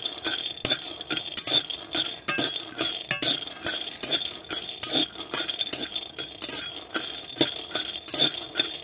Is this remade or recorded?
recorded